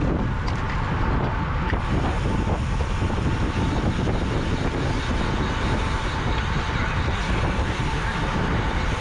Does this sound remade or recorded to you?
recorded